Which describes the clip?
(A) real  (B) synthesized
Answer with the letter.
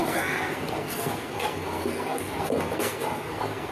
B